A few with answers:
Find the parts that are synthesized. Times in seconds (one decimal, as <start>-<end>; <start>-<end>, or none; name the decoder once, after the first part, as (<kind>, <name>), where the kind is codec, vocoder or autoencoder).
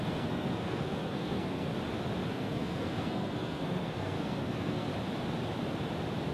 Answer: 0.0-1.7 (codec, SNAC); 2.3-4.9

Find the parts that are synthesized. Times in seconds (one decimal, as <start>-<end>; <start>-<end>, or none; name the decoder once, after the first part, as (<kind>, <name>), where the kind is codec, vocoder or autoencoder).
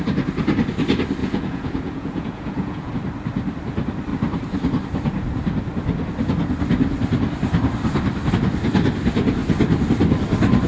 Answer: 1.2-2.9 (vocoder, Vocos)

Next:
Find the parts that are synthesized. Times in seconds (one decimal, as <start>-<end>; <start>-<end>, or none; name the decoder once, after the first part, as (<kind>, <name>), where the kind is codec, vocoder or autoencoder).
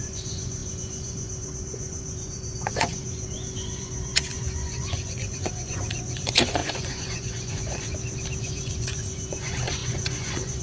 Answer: 0.0-7.9 (vocoder, Vocos); 8.4-10.6